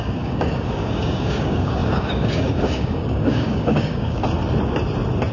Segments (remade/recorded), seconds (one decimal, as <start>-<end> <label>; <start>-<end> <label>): 0.0-4.2 remade; 4.2-5.3 recorded

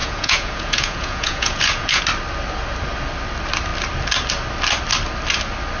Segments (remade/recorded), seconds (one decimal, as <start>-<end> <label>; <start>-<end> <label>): 0.0-2.0 remade; 2.0-5.8 recorded